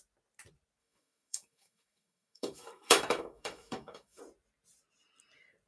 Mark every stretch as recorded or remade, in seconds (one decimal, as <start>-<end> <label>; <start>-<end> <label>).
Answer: 0.0-0.8 recorded; 0.8-4.2 remade; 4.2-5.7 recorded